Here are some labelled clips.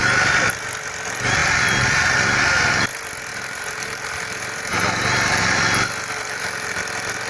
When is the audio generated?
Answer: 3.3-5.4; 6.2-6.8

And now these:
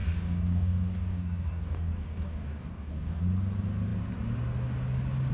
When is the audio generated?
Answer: 0.0-3.2

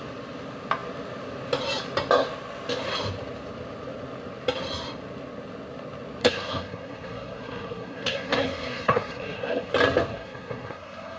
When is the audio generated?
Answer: 6.2-9.7; 10.1-11.2

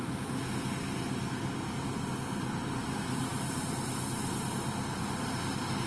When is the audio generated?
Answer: none